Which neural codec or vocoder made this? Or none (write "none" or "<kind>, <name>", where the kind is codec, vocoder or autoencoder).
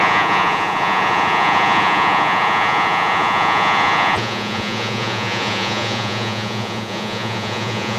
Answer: vocoder, Vocos